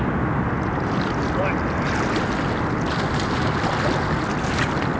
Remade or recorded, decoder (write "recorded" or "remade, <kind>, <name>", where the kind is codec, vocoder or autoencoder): recorded